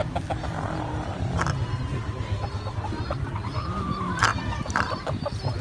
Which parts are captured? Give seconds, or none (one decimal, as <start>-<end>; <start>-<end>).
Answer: 0.0-5.6